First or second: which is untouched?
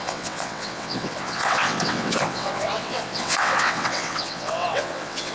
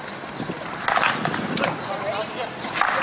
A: second